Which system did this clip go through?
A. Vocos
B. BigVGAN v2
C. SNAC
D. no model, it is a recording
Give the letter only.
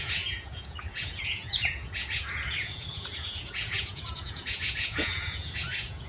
A